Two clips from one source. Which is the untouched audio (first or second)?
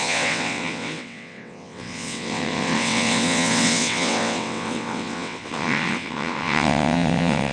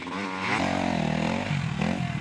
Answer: second